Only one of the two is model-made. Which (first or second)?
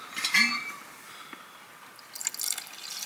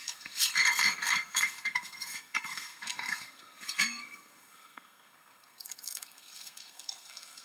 second